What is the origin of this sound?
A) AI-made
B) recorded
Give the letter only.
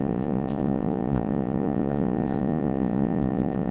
A